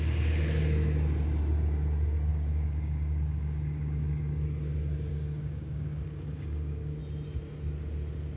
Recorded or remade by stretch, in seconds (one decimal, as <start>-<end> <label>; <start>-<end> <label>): 0.0-2.3 recorded; 2.3-4.3 remade; 4.3-5.1 recorded; 5.1-7.0 remade; 7.0-8.4 recorded